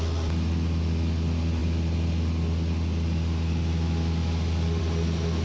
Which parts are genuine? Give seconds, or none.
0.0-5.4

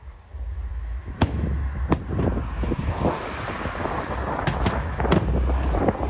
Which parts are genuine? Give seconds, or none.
0.0-0.7; 1.8-6.1

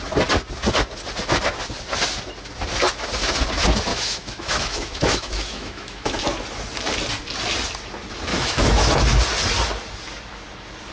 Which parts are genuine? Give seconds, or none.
0.0-3.9; 6.2-8.3; 8.9-10.9

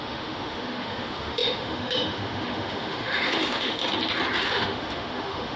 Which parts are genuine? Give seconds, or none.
3.8-4.4

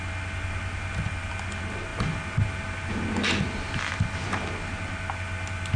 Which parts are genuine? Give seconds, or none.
0.0-5.8

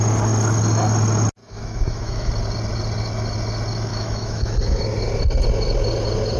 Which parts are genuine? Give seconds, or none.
0.0-1.4; 2.3-3.9; 4.8-6.4

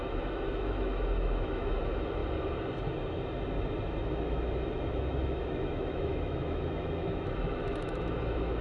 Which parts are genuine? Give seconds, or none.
2.2-4.0

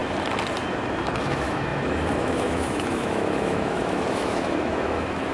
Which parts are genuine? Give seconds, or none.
0.0-1.2